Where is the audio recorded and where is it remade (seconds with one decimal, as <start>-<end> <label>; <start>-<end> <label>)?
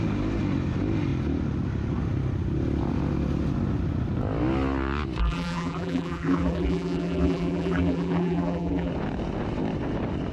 0.0-5.2 recorded; 5.2-8.9 remade; 8.9-10.3 recorded